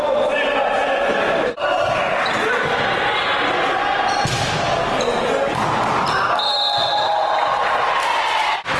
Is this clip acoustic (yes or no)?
yes